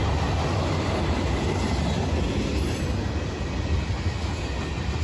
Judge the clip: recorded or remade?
recorded